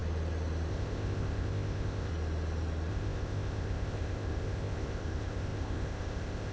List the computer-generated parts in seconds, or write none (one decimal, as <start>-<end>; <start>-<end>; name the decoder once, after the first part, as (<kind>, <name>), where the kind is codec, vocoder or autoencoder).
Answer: 0.7-2.1 (codec, ZipCodec); 2.9-6.5